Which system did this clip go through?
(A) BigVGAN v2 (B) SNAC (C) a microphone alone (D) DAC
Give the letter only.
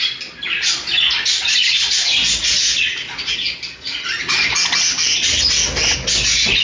C